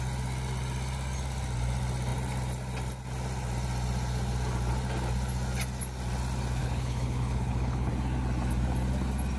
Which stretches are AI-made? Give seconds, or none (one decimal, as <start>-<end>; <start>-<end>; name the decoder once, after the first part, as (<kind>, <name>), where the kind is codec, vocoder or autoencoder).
6.6-7.9 (codec, HILCodec)